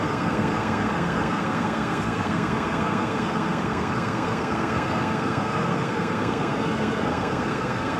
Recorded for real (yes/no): no